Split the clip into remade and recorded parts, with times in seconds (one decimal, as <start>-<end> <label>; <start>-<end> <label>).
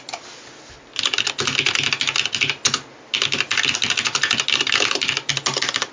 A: 0.0-5.9 recorded